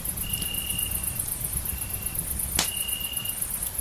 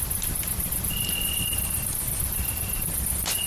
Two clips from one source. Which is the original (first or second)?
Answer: first